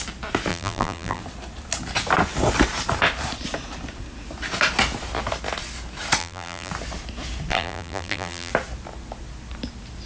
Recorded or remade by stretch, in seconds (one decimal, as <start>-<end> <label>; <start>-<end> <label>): 0.0-0.5 recorded; 0.5-1.2 remade; 1.2-6.2 recorded; 6.2-6.7 remade; 6.7-7.5 recorded; 7.5-8.5 remade; 8.5-10.1 recorded